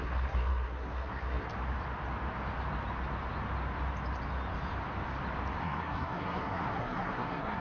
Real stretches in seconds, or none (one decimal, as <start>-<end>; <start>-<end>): 1.5-5.6